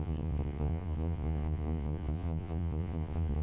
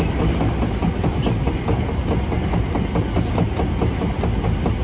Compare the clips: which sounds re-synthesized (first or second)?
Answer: first